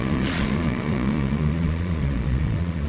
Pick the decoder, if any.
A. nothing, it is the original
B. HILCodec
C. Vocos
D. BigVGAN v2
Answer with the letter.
C